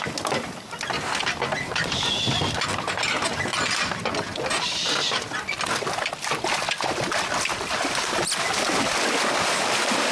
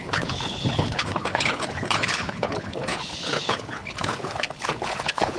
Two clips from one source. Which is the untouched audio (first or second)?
first